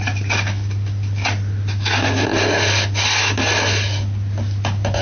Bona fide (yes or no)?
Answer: yes